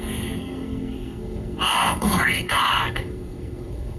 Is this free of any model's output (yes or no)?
no